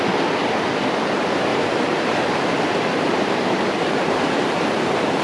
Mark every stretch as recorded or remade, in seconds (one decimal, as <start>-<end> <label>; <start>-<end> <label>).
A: 0.0-1.5 recorded; 1.5-4.6 remade; 4.6-5.2 recorded